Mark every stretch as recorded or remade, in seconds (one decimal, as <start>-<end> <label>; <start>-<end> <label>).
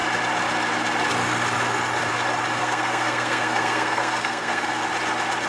0.0-2.6 recorded; 2.6-4.8 remade; 4.8-5.5 recorded